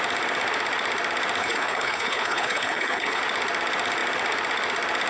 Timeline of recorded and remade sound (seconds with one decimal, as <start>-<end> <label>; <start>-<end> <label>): 0.0-1.4 recorded; 1.4-3.2 remade; 3.2-5.1 recorded